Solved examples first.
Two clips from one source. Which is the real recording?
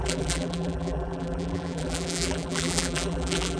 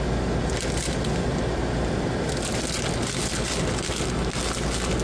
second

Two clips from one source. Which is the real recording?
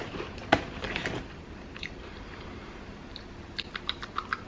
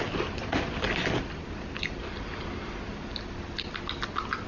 second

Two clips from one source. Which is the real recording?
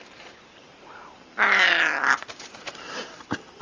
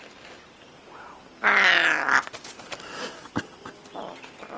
second